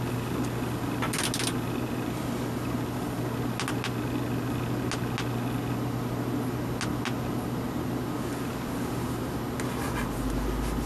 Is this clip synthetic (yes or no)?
no